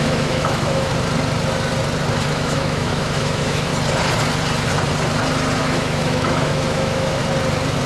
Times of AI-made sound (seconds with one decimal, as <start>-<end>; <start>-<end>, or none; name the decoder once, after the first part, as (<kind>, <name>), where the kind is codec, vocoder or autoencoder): 0.0-0.9 (autoencoder, DAC-VAE); 2.3-3.7; 5.6-7.2